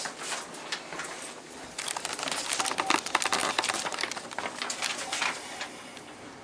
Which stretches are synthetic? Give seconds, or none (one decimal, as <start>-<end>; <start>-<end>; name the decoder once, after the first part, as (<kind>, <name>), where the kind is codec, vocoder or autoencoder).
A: none